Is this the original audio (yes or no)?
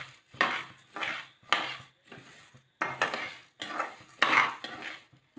yes